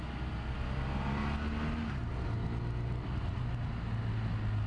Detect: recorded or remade recorded